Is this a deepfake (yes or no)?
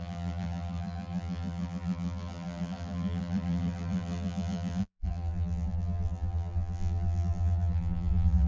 yes